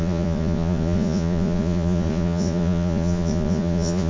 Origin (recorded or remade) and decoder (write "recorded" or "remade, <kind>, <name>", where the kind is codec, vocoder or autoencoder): remade, vocoder, Vocos